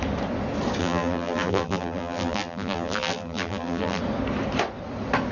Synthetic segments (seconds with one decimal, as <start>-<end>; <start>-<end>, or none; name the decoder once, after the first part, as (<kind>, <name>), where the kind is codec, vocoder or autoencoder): 0.8-4.0 (vocoder, BigVGAN v2)